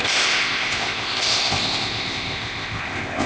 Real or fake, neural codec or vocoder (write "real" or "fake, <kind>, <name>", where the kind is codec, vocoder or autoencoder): fake, codec, ZipCodec